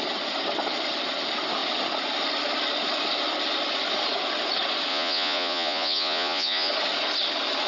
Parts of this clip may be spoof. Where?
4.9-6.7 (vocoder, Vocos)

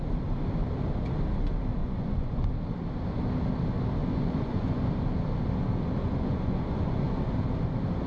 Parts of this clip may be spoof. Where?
1.8-2.5 (vocoder, Vocos); 4.0-4.8; 6.0-7.2

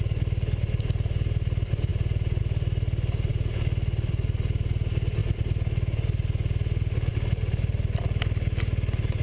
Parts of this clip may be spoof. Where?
none